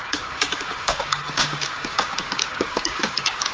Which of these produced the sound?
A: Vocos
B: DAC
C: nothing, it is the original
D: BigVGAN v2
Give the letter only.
B